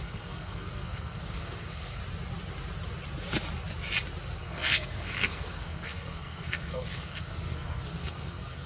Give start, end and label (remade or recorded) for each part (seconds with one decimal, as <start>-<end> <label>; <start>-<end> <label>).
0.0-2.0 remade; 2.0-4.4 recorded; 4.4-8.7 remade